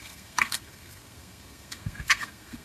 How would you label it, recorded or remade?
remade